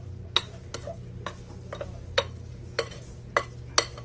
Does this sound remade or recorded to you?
recorded